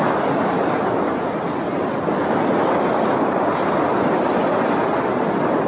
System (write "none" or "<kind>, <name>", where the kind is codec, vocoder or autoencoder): none